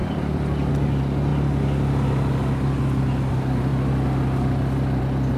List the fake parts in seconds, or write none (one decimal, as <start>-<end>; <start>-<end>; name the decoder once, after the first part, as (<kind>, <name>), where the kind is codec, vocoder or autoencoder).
0.0-0.7 (vocoder, BigVGAN v2)